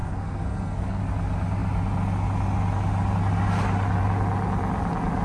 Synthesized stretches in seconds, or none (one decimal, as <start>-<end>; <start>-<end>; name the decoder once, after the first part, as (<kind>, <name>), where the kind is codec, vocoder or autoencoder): 0.0-1.0 (codec, SNAC)